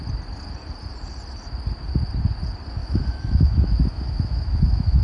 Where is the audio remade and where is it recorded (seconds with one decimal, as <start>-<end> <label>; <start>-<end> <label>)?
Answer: 0.0-2.8 recorded; 2.8-5.0 remade